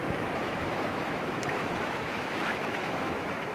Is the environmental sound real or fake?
fake